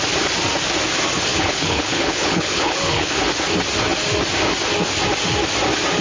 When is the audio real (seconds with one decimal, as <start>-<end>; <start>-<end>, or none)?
0.0-1.3; 3.2-6.0